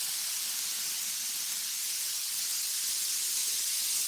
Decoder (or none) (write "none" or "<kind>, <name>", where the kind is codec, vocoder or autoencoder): none